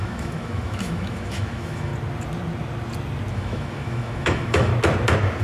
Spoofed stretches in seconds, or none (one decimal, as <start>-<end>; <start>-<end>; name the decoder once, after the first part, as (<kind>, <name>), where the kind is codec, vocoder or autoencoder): 0.0-1.9 (autoencoder, DAC-VAE); 3.3-4.7